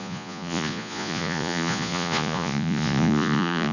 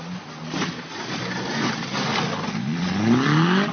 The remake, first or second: first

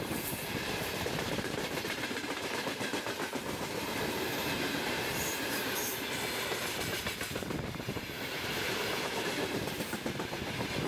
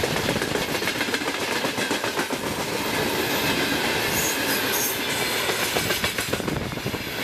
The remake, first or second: first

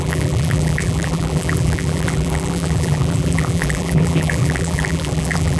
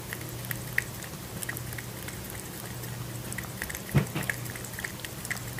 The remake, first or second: first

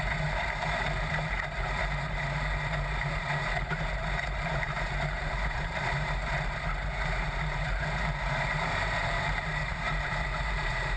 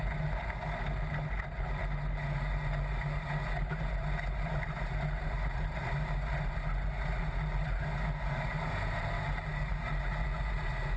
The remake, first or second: first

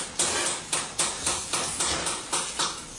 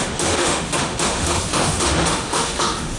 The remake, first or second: second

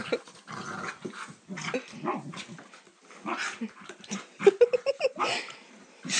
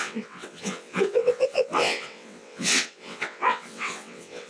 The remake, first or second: second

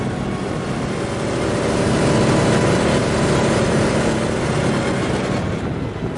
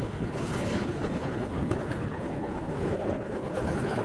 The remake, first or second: second